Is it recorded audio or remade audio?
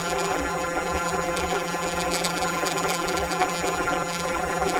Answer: remade